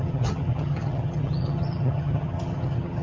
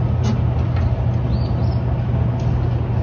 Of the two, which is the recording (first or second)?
second